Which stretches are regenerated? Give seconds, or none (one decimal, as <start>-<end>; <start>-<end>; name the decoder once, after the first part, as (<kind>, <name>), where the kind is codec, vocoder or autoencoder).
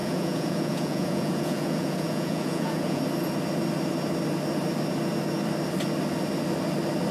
0.0-3.0 (vocoder, Vocos)